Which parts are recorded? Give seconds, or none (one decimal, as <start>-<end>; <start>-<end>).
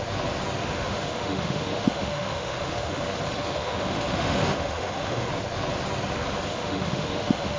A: 0.0-0.6; 3.0-3.4; 5.3-6.5